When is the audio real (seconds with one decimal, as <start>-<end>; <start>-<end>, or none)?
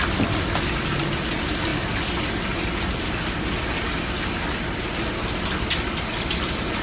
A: 0.0-6.8